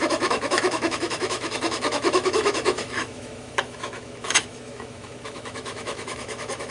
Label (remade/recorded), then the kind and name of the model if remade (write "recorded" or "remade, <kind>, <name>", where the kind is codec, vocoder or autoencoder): remade, autoencoder, DAC-VAE